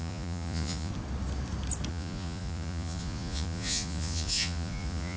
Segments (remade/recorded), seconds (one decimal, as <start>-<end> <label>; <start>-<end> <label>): 0.0-0.9 remade; 0.9-1.9 recorded; 1.9-5.2 remade